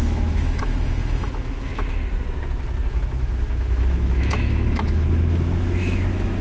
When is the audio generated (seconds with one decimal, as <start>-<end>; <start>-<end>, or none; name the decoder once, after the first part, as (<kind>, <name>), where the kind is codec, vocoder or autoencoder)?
0.0-1.7 (autoencoder, DAC-VAE); 2.9-6.4